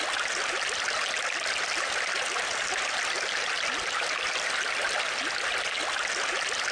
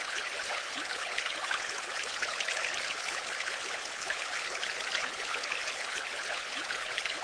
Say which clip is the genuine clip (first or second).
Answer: first